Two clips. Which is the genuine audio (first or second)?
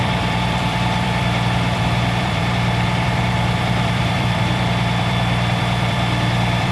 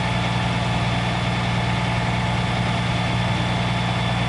second